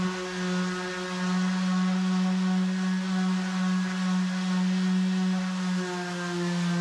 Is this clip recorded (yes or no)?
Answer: yes